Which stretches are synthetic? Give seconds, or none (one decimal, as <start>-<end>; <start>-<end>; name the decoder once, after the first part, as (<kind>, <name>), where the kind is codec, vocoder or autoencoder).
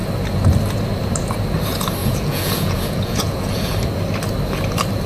2.0-3.7 (vocoder, Vocos)